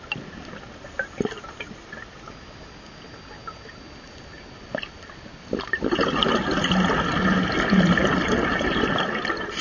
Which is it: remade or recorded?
recorded